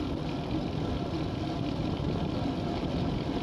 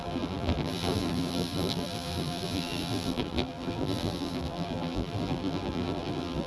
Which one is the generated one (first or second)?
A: second